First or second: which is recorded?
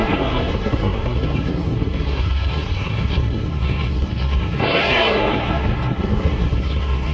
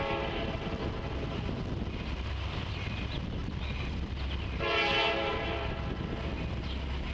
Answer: second